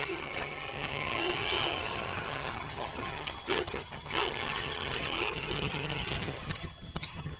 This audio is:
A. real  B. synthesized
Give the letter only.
B